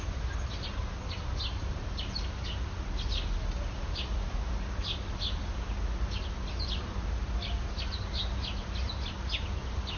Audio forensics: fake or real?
real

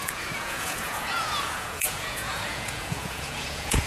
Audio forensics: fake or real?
fake